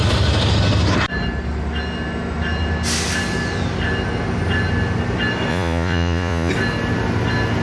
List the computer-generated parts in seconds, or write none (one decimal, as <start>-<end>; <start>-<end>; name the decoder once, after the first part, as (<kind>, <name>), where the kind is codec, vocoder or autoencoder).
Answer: 5.5-6.5 (vocoder, Vocos)